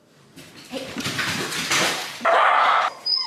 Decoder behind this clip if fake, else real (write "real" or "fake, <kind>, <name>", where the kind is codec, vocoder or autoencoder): fake, vocoder, BigVGAN v2